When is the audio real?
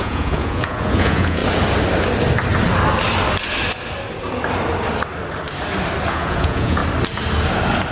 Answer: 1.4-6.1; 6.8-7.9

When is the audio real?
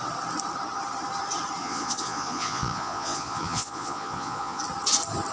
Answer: 0.0-1.6; 4.6-5.3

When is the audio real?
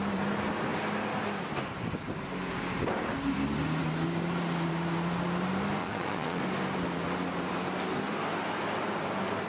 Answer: 0.0-5.8; 6.4-9.5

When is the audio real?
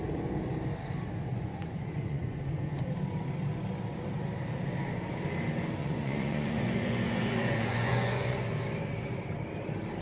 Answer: 0.0-1.3; 2.8-5.8; 8.5-10.0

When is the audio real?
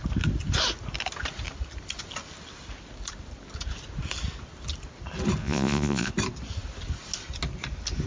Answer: 0.0-5.4; 6.1-8.1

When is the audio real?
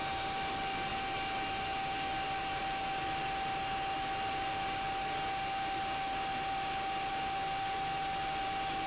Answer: 0.0-8.9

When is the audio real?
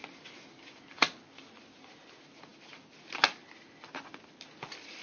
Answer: 0.0-5.0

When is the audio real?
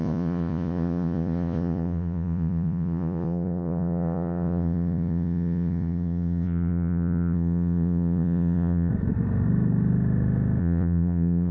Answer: 8.9-10.6